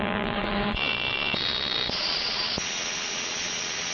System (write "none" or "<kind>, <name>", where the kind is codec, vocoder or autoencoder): vocoder, Vocos